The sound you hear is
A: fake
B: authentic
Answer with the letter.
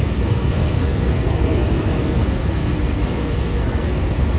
A